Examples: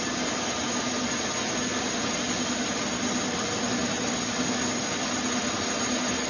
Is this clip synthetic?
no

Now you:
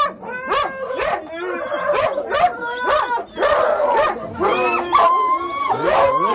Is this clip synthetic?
no